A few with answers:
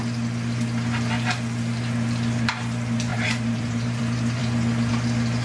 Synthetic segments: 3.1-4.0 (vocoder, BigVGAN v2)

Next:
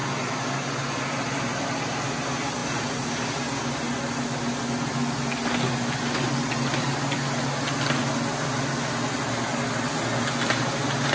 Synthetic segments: none

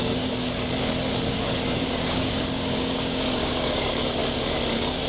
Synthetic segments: 0.0-0.6 (codec, DAC); 1.3-4.2

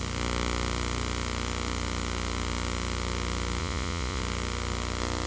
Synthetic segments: 3.6-4.2 (vocoder, Vocos)